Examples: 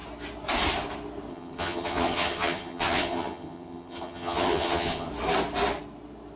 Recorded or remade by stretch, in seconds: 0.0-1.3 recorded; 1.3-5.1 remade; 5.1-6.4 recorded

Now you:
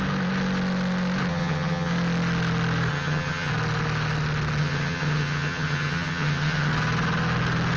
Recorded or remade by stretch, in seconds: 0.0-1.3 recorded; 1.3-1.9 remade; 1.9-2.9 recorded; 2.9-3.5 remade; 3.5-4.6 recorded; 4.6-6.7 remade; 6.7-7.8 recorded